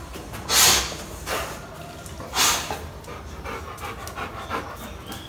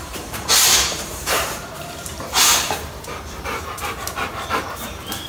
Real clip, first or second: first